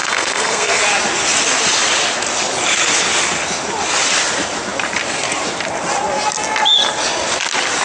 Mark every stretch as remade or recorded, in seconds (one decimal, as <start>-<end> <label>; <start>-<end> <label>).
0.0-0.8 remade; 0.8-7.8 recorded